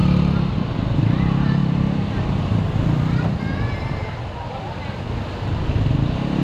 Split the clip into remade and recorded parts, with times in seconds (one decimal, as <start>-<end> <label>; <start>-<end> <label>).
0.0-1.6 recorded; 1.6-4.6 remade; 4.6-6.4 recorded